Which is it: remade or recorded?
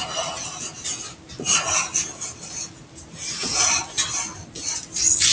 recorded